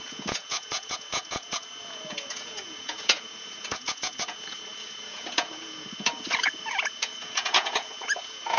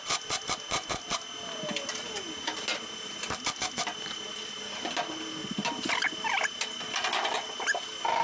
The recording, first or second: second